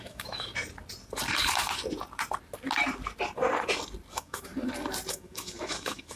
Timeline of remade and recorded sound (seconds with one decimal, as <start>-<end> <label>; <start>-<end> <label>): 0.0-0.5 remade; 0.5-4.1 recorded; 4.1-4.5 remade; 4.5-5.1 recorded; 5.1-6.2 remade